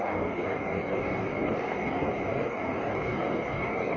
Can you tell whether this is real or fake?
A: fake